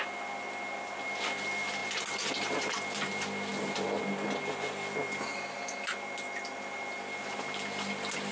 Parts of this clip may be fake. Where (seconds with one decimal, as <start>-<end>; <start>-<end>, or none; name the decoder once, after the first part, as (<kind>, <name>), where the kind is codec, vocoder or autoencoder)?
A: none